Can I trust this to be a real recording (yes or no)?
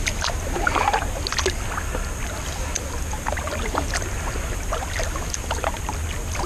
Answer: yes